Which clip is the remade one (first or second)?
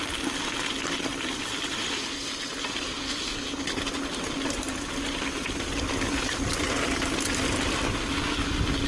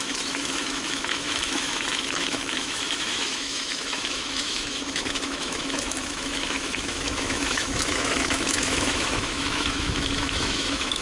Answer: second